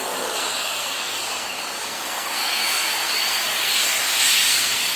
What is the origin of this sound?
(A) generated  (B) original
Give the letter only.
A